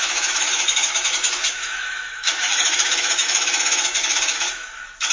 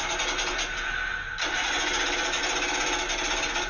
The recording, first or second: second